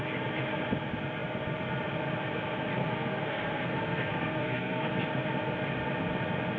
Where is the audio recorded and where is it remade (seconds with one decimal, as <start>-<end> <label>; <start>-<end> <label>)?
0.0-2.8 recorded; 2.8-4.9 remade; 4.9-6.6 recorded